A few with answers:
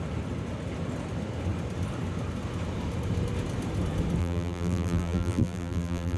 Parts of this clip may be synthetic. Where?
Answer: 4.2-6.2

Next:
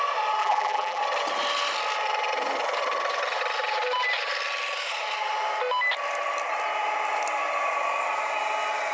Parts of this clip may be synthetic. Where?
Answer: 0.4-1.0

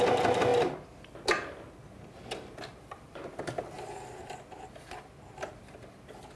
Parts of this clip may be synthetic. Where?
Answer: 2.7-5.6

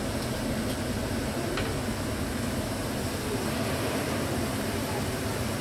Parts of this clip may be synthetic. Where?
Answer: none

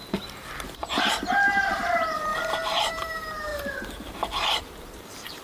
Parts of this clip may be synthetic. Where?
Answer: 1.0-3.5; 4.1-5.4

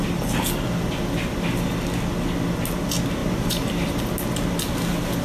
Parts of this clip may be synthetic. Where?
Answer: 3.2-4.0

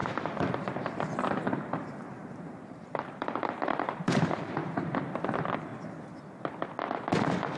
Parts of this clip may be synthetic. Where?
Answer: 0.0-4.5